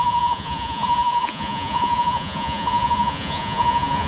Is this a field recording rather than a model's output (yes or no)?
no